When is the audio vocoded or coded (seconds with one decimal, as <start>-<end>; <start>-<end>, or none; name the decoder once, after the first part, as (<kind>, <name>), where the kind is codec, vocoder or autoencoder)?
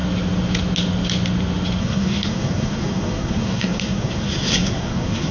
1.8-5.3 (codec, SNAC)